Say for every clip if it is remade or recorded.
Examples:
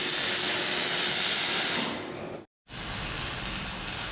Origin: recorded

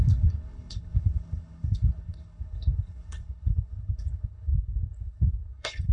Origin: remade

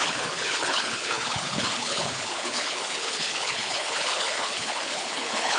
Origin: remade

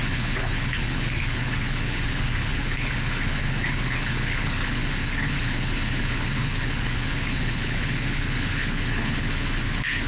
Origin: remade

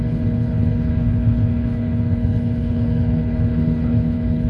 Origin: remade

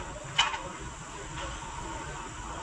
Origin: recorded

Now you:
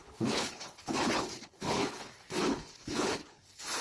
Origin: remade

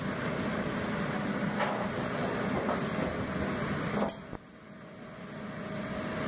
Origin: recorded